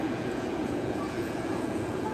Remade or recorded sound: remade